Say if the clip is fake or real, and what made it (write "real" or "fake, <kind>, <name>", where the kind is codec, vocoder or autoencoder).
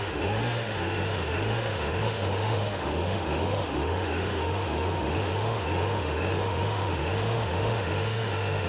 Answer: fake, autoencoder, DAC-VAE